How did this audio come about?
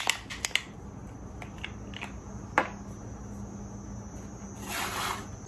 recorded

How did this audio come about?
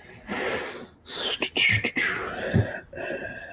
recorded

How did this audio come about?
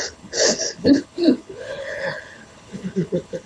remade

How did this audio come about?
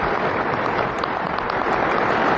recorded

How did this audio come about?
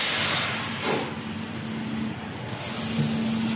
recorded